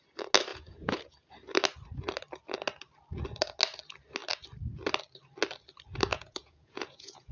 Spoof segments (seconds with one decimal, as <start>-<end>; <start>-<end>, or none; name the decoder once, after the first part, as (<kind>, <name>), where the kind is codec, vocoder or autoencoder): 0.5-1.3 (vocoder, Vocos); 6.1-7.3